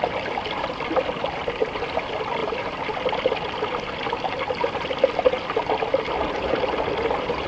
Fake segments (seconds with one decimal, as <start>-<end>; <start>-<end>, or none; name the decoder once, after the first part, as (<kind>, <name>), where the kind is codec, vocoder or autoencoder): none